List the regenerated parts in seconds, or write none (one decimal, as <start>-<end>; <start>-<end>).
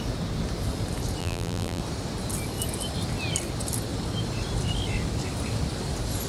1.2-1.8